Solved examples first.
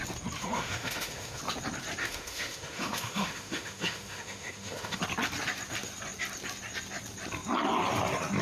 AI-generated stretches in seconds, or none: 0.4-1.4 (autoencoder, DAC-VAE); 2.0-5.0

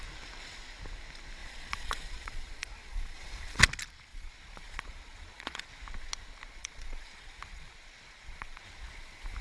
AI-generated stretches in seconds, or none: 1.4-3.6 (vocoder, Vocos); 4.1-5.7; 6.6-8.6

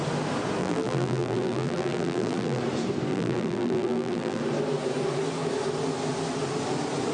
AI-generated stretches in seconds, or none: 0.6-2.6 (vocoder, BigVGAN v2); 3.1-4.4

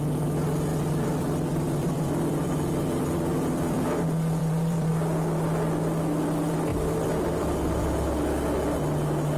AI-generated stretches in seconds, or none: 0.7-4.0 (vocoder, BigVGAN v2); 4.4-4.9; 6.7-7.9

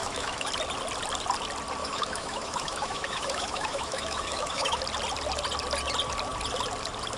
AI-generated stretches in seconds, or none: 0.0-0.5 (autoencoder, DAC-VAE); 1.8-4.8

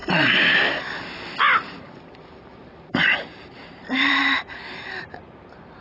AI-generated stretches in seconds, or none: 3.5-4.2 (vocoder, BigVGAN v2); 5.0-5.8

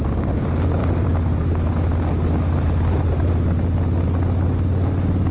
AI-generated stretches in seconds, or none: 0.8-1.4 (vocoder, BigVGAN v2)